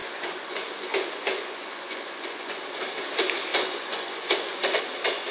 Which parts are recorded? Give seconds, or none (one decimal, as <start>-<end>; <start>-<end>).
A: 2.6-3.5; 4.8-5.3